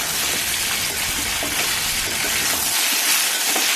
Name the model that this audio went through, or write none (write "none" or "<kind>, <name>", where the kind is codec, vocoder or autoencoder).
none